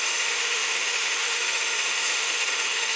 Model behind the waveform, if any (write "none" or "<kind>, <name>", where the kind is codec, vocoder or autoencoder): autoencoder, DAC-VAE